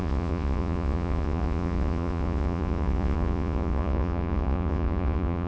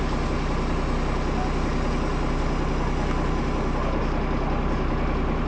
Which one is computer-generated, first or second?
first